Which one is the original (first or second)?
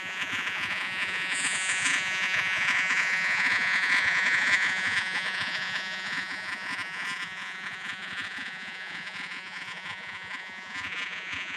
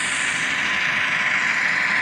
second